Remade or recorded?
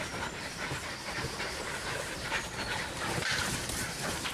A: remade